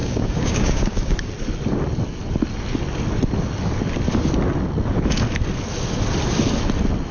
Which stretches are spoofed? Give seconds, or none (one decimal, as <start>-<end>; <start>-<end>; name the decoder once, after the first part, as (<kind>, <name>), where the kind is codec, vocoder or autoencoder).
0.0-1.3 (codec, DAC)